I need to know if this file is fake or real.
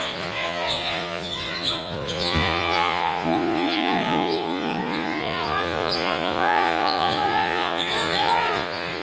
fake